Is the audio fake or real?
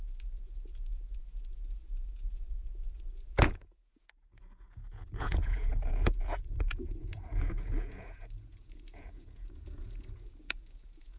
fake